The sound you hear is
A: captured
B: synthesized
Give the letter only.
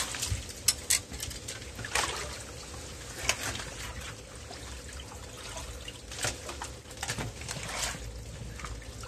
A